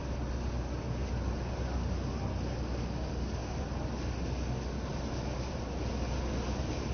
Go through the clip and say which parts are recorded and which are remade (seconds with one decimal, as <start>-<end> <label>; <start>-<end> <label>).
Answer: 0.0-6.9 recorded